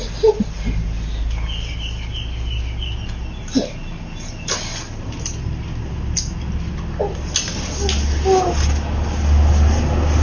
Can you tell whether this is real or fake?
real